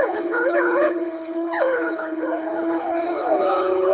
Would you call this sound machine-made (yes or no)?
yes